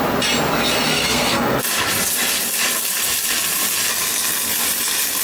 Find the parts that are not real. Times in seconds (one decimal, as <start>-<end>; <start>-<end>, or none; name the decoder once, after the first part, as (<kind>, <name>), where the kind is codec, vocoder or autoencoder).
0.9-1.6 (codec, SNAC)